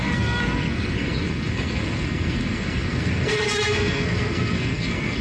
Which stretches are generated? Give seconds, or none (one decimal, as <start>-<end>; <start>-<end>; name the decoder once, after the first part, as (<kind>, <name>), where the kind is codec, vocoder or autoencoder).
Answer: 0.0-5.2 (codec, SNAC)